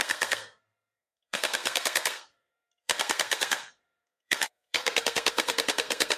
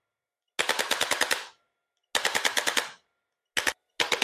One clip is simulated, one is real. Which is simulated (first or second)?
first